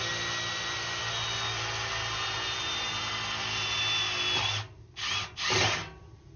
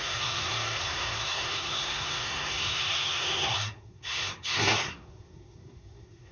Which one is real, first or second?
first